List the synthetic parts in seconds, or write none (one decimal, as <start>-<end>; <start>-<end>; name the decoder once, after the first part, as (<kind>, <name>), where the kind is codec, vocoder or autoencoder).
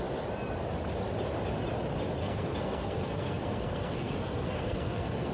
2.2-5.3 (codec, SNAC)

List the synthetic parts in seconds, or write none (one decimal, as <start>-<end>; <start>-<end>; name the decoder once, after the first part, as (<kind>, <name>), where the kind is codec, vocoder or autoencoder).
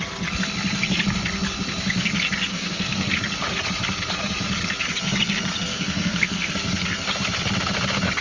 2.5-3.1 (codec, SNAC); 5.7-6.5